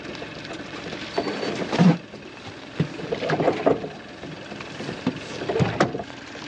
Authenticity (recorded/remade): recorded